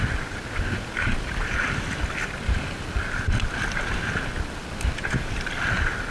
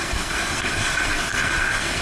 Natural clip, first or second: first